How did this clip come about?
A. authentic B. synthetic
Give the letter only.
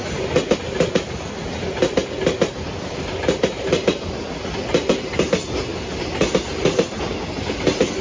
A